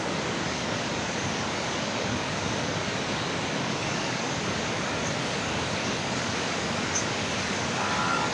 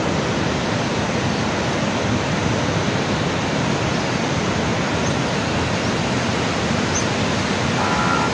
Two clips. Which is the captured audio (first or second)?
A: second